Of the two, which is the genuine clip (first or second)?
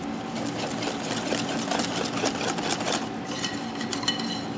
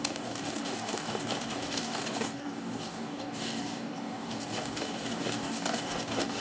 first